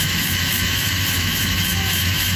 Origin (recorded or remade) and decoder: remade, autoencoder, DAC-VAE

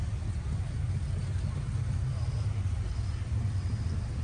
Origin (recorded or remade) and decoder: recorded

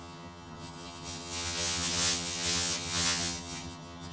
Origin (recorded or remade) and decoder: remade, vocoder, HiFi-GAN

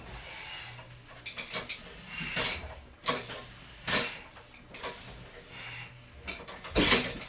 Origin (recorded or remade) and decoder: recorded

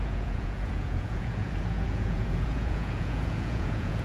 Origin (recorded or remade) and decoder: remade, vocoder, Vocos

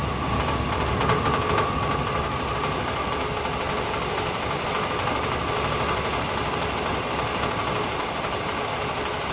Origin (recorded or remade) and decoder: recorded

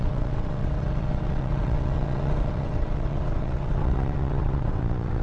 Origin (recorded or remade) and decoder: remade, vocoder, WaveNeXt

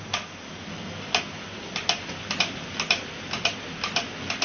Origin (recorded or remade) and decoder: recorded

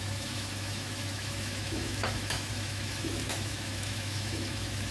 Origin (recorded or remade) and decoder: remade, autoencoder, DAC-VAE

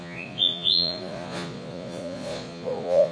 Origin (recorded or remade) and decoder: remade, vocoder, Vocos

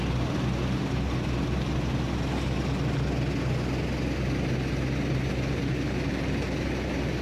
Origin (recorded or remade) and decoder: recorded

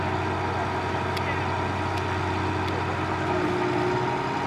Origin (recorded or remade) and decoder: recorded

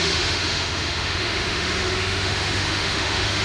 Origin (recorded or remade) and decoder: remade, autoencoder, DAC-VAE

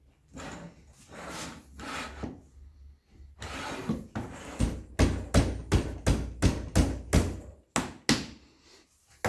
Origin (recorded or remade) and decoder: recorded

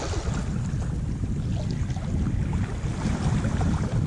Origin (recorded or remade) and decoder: recorded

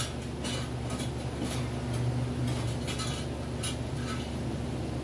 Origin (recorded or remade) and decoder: recorded